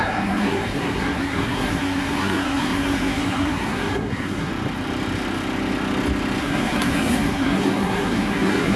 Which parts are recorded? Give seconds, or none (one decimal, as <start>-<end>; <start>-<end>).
4.5-6.4